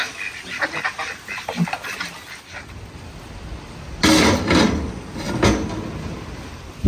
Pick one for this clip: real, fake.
real